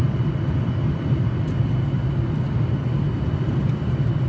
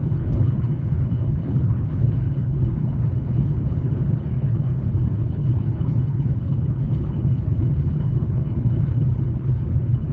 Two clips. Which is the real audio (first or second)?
first